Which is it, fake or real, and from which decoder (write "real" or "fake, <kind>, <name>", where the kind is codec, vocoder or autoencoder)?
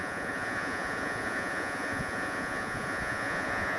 fake, vocoder, Vocos